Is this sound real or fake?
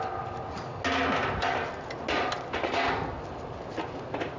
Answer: real